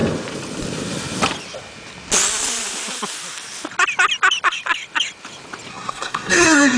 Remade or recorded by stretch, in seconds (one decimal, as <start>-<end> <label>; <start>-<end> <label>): 0.0-5.7 recorded; 5.7-6.8 remade